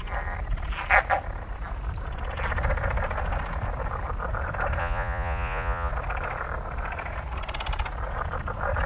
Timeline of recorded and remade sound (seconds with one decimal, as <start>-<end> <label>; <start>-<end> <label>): 0.0-4.8 recorded; 4.8-5.9 remade; 5.9-8.9 recorded